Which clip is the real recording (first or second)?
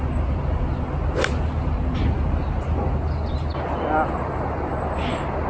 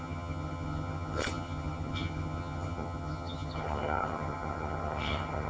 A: first